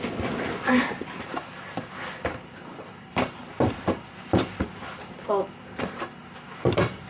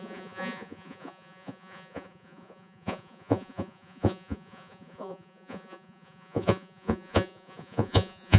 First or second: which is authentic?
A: first